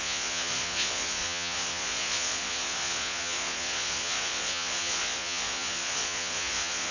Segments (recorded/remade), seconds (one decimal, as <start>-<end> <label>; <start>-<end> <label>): 0.0-6.9 remade